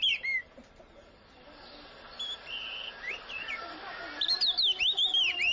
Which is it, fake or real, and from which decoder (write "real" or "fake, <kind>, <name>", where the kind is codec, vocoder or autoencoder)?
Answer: real